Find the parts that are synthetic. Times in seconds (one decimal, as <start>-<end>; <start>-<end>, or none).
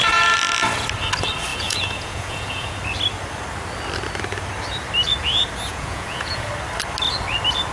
1.5-2.7; 5.7-6.5